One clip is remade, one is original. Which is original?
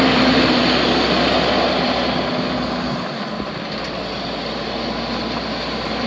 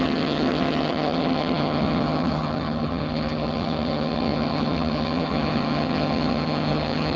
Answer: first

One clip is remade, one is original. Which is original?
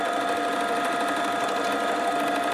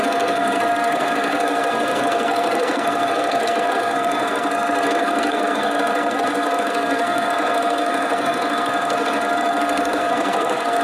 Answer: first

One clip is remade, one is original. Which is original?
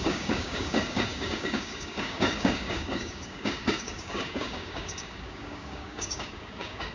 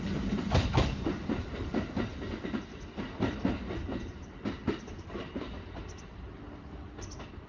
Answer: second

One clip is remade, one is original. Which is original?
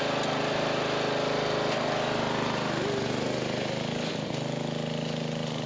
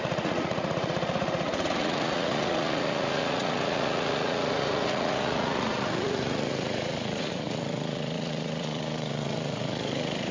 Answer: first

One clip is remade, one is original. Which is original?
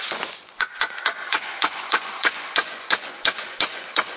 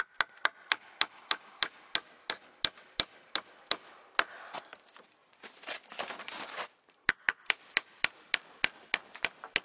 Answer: second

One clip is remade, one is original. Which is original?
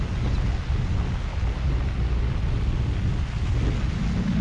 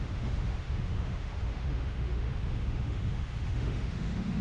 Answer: first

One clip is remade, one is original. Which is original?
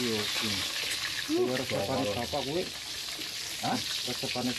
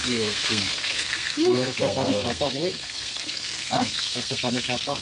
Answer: first